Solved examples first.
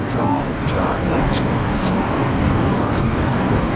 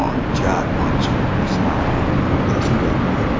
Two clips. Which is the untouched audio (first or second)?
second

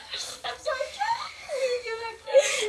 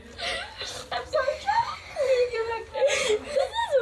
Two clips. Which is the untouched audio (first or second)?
second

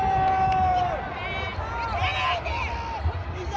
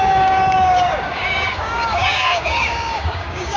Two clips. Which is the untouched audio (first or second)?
first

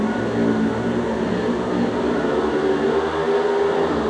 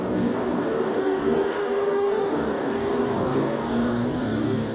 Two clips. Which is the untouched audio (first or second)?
first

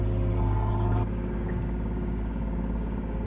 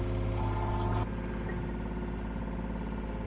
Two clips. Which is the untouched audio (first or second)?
second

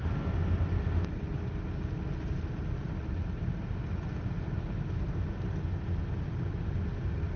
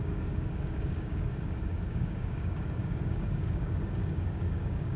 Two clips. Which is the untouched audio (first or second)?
first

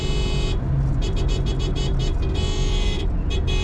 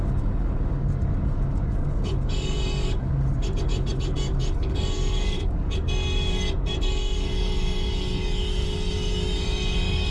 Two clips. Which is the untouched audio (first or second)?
first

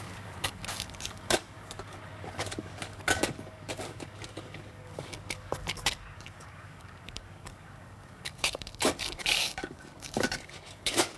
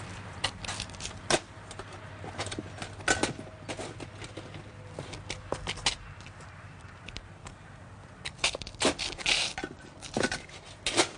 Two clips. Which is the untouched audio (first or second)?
second